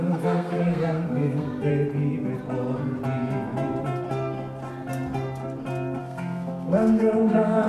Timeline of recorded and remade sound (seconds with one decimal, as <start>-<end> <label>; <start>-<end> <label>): 0.0-1.7 remade; 1.7-6.0 recorded; 6.0-7.7 remade